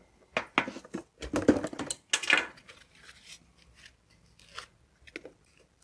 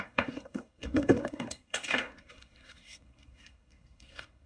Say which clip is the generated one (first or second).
second